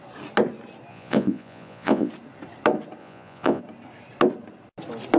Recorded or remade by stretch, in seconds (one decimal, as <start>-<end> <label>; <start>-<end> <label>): 0.0-0.9 recorded; 0.9-2.1 remade; 2.1-3.0 recorded; 3.0-3.6 remade; 3.6-5.2 recorded